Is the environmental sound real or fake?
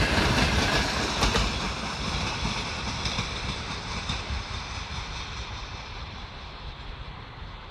fake